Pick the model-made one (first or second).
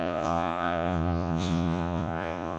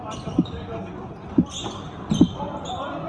first